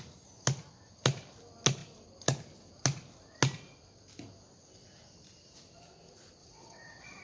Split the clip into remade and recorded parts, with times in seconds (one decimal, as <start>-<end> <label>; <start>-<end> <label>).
0.0-6.4 recorded; 6.4-7.2 remade